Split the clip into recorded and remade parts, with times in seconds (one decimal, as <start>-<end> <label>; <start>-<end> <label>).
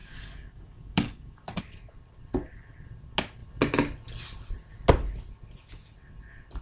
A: 0.0-1.6 remade; 1.6-6.6 recorded